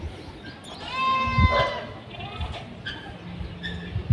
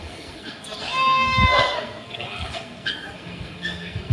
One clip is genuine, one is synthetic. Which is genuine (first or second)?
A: first